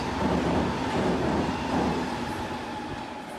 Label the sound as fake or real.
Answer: real